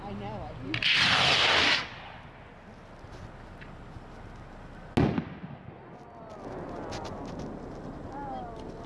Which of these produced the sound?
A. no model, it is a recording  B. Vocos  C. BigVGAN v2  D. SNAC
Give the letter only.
A